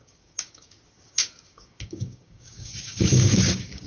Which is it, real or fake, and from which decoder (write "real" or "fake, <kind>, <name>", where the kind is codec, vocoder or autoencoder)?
fake, codec, DAC